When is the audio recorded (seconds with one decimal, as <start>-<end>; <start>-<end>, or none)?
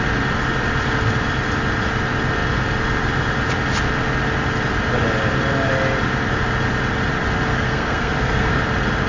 0.0-7.5; 8.6-9.1